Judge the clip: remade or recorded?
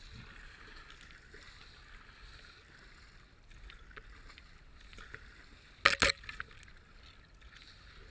recorded